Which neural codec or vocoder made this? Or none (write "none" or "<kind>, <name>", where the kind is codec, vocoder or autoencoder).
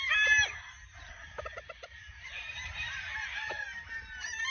vocoder, BigVGAN v2